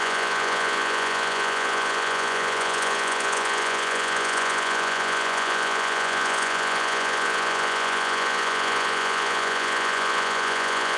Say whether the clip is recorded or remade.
remade